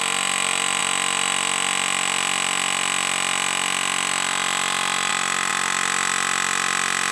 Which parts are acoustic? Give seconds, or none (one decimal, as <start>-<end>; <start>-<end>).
0.0-7.1